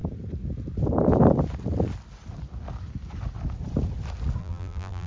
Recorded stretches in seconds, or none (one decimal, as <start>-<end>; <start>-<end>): 0.0-4.4